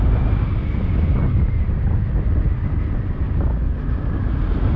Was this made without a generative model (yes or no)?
yes